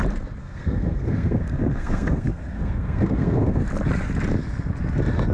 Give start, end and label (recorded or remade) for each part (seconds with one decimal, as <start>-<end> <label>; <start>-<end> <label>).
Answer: 0.0-0.4 recorded; 0.4-3.6 remade; 3.6-5.3 recorded

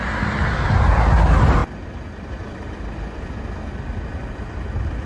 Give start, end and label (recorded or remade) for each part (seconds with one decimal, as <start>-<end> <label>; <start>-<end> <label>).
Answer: 0.0-5.1 recorded

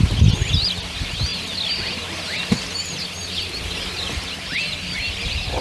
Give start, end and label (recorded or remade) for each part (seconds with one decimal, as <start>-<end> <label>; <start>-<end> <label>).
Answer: 0.0-5.6 recorded

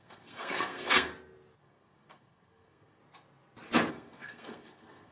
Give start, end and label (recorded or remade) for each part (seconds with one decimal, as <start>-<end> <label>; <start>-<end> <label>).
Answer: 0.0-1.1 remade; 1.1-1.6 recorded; 1.6-3.0 remade; 3.0-3.9 recorded; 3.9-5.1 remade

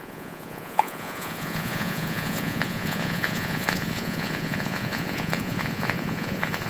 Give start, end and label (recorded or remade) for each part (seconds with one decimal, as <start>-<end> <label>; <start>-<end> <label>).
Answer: 0.0-6.7 remade

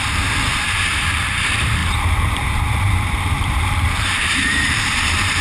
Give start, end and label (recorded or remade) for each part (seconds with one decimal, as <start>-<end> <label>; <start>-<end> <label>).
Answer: 0.0-5.4 remade

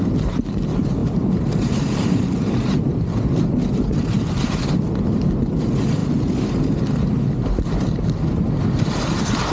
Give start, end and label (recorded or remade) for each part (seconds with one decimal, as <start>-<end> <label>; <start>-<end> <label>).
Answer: 0.0-1.0 recorded; 1.0-2.9 remade; 2.9-9.5 recorded

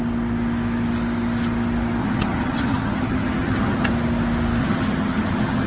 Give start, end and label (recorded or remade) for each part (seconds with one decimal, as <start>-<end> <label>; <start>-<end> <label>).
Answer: 0.0-2.0 recorded; 2.0-3.9 remade; 3.9-4.6 recorded; 4.6-5.7 remade